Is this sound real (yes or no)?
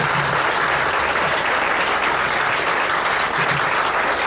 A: no